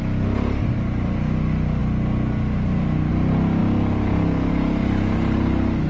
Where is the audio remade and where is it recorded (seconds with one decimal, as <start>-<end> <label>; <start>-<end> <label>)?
0.0-5.9 recorded